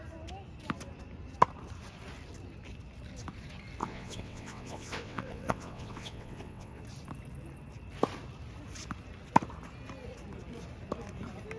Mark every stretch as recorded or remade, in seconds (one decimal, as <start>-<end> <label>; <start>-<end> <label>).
0.0-3.8 recorded; 3.8-6.8 remade; 6.8-11.6 recorded